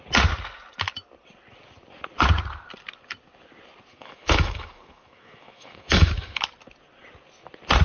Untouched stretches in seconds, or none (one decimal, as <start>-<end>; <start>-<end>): 0.0-3.9; 6.4-7.8